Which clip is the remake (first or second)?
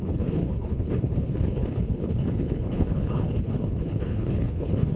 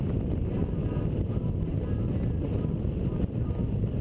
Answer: first